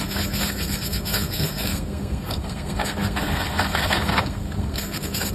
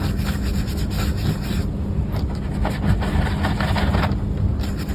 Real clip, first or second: second